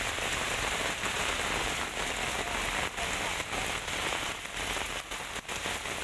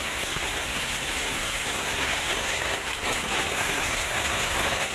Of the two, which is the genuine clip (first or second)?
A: first